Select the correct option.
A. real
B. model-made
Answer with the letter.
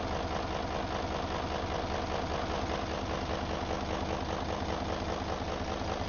A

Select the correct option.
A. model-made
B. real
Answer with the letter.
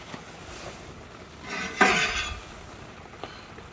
B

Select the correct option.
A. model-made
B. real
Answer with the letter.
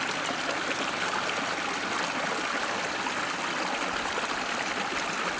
B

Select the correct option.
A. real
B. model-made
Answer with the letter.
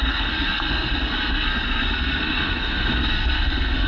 B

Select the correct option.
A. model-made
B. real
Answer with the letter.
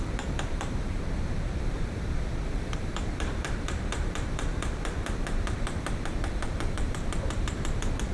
A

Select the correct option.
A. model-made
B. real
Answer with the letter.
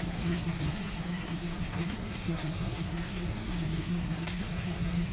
A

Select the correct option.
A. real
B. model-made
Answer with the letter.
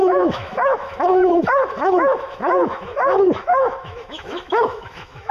B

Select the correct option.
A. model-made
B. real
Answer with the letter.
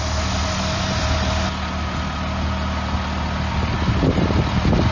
B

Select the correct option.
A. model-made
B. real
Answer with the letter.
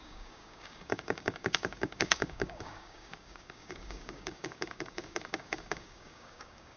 A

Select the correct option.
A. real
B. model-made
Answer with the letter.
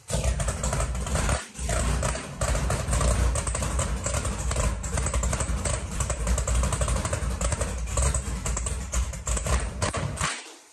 B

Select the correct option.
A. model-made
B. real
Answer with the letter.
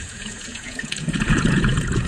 A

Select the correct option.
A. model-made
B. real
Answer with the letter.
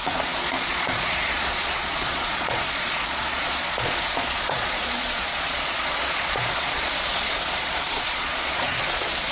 A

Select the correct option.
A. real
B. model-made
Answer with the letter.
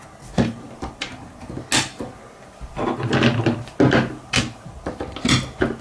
A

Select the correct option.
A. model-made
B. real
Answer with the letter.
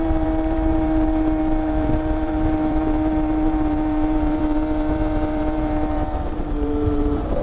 A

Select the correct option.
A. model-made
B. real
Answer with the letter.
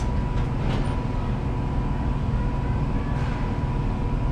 B